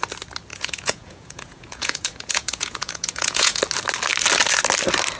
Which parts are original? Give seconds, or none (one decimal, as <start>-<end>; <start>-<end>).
0.0-0.5; 3.6-5.2